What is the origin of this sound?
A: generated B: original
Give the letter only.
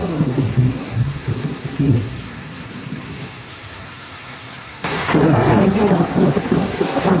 A